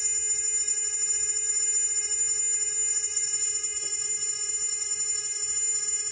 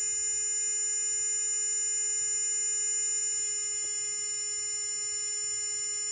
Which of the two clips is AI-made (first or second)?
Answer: first